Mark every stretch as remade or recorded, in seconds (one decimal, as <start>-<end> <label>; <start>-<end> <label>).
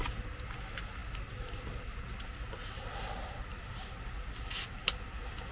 0.0-5.5 recorded